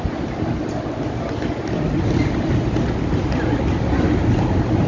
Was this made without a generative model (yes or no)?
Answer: yes